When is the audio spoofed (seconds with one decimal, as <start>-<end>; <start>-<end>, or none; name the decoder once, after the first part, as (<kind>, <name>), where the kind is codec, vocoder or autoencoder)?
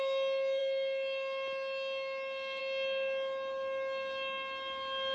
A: none